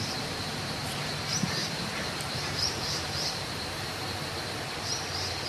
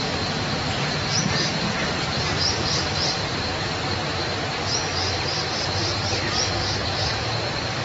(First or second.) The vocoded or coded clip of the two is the first